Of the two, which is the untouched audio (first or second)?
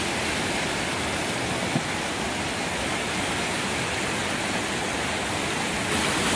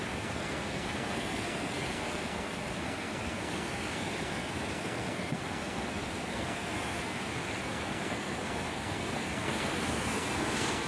first